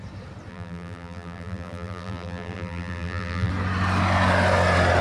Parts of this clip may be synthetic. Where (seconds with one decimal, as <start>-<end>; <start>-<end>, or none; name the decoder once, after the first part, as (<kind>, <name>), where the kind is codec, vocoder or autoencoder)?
0.5-3.5 (vocoder, BigVGAN v2)